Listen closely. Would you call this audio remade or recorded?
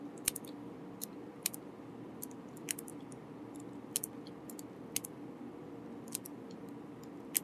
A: recorded